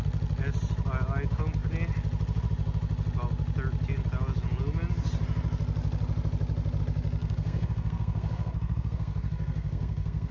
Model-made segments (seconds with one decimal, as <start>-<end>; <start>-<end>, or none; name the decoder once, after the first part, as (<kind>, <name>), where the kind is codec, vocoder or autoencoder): 7.2-10.3 (codec, SNAC)